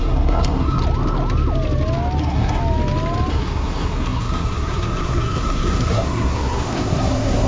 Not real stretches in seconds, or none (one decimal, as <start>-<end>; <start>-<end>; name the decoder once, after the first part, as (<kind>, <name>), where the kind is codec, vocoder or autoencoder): 0.0-0.8 (codec, SNAC); 2.2-2.6; 3.3-7.5